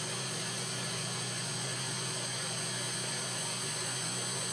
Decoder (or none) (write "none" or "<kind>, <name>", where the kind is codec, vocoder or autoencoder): vocoder, Vocos